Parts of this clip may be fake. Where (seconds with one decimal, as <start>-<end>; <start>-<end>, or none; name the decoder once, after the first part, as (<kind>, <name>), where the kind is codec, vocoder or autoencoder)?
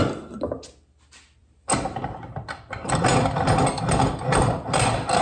none